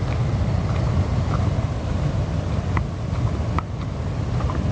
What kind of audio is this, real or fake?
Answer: real